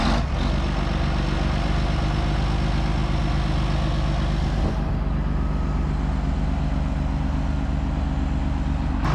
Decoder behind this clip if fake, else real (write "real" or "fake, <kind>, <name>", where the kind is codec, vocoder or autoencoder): real